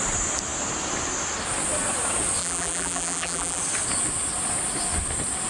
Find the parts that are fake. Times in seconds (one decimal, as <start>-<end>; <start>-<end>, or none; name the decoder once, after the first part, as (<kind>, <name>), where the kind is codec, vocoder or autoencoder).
2.4-3.6 (vocoder, BigVGAN v2)